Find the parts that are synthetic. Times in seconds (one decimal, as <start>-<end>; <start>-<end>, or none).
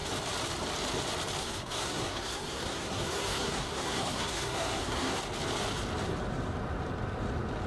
1.4-5.2